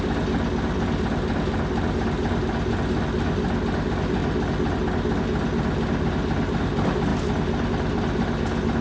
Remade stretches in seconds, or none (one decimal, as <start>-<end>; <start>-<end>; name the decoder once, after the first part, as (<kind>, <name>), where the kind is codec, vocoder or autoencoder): none